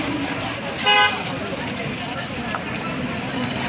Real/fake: real